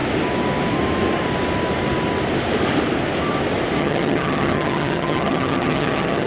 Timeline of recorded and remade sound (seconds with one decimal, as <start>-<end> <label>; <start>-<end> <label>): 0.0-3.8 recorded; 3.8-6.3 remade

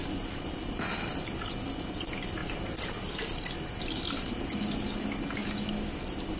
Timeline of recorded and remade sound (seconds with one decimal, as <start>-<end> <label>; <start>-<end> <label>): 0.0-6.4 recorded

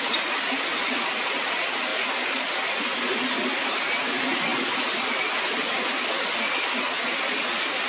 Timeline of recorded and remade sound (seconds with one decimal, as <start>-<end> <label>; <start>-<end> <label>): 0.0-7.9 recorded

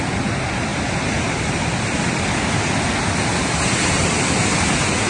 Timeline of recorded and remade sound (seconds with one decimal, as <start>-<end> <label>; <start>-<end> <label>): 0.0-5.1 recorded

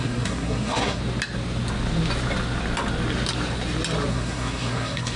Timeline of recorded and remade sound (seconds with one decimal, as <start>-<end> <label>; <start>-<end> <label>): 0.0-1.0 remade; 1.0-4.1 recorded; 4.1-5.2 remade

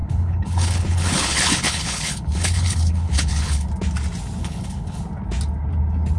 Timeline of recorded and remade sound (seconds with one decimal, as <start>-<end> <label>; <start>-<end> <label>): 0.0-3.7 remade; 3.7-4.4 recorded; 4.4-5.0 remade; 5.0-6.2 recorded

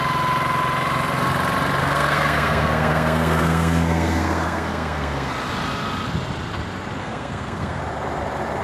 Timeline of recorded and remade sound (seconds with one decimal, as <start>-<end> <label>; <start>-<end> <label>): 0.0-1.8 recorded; 1.8-5.3 remade; 5.3-7.0 recorded; 7.0-7.8 remade; 7.8-8.6 recorded